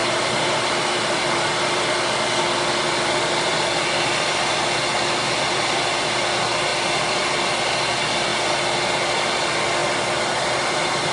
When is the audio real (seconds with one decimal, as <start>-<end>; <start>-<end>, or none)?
1.7-11.1